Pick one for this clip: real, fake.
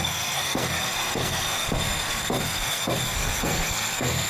fake